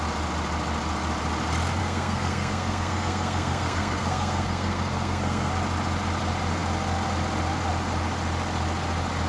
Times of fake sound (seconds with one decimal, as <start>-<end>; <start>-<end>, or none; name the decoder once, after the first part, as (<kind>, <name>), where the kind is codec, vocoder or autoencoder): 1.8-5.5 (codec, SNAC)